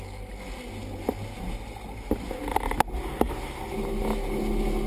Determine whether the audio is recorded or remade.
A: recorded